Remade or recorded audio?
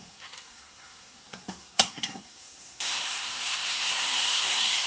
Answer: remade